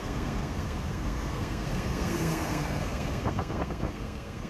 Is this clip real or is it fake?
fake